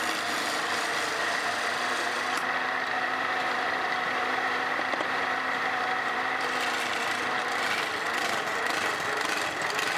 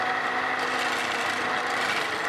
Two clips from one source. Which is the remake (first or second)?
first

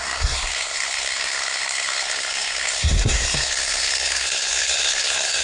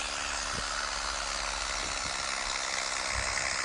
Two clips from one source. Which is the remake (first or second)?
first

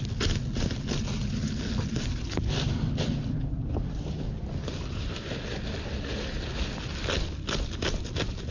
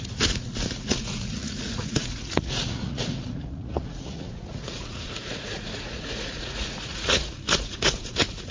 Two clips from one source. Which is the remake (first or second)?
second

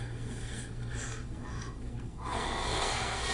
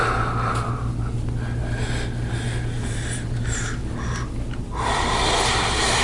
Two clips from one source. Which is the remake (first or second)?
first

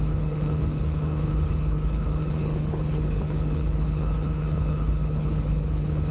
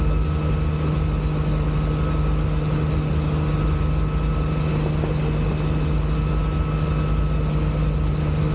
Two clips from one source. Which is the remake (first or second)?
first